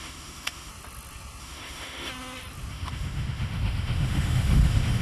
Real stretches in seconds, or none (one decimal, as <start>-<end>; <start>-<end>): 0.7-1.4; 2.1-2.7